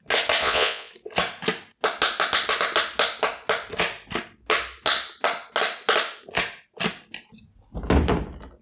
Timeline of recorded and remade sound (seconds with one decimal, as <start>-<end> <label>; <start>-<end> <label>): 0.0-0.4 recorded; 0.4-0.9 remade; 0.9-8.6 recorded